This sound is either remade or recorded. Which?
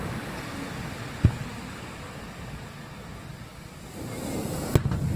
recorded